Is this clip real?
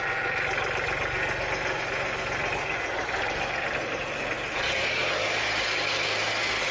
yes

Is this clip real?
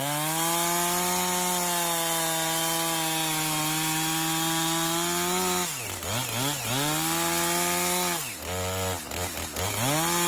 yes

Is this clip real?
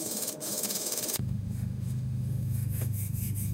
no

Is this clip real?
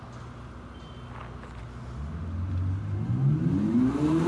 yes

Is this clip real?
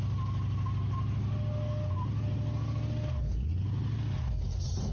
yes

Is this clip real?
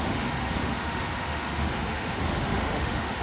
no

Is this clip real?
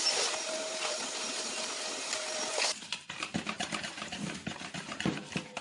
no